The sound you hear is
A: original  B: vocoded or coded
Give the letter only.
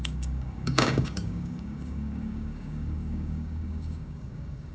B